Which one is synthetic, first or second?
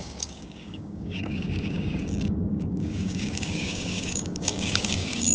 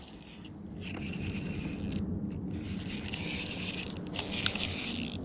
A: first